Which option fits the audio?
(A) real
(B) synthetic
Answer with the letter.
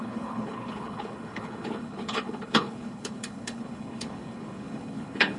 B